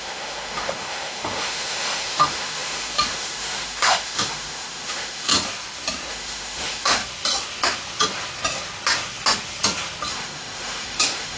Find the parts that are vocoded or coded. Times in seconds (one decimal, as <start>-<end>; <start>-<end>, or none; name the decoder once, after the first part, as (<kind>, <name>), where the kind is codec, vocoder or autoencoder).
0.0-5.3 (autoencoder, DAC-VAE); 6.1-7.0; 10.1-11.4